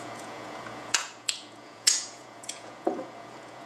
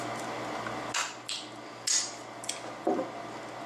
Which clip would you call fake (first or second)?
first